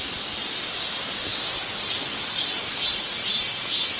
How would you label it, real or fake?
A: real